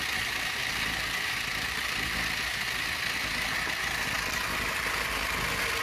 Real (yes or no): yes